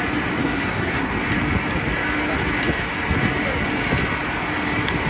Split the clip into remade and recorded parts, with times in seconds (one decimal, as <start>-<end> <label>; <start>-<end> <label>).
0.0-0.4 recorded; 0.4-1.1 remade; 1.1-5.1 recorded